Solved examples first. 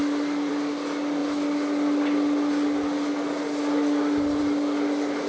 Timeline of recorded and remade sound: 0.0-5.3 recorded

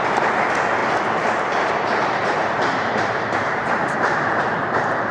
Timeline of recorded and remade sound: 0.0-2.0 recorded; 2.0-5.1 remade

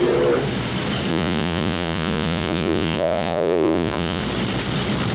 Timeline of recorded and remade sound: 0.0-1.1 recorded; 1.1-4.2 remade; 4.2-5.1 recorded

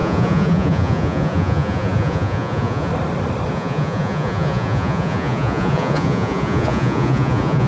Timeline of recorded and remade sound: 0.0-2.9 remade; 2.9-3.5 recorded; 3.5-7.7 remade

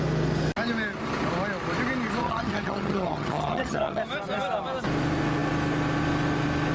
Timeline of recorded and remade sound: 0.0-2.2 recorded; 2.2-4.0 remade; 4.0-6.7 recorded

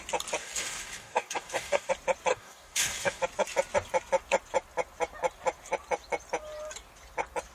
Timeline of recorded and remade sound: 0.0-0.4 recorded; 0.4-1.9 remade; 1.9-2.3 recorded; 2.3-3.2 remade; 3.2-7.5 recorded

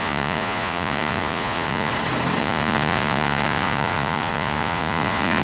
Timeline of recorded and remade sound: 0.0-1.9 remade; 1.9-2.4 recorded; 2.4-5.4 remade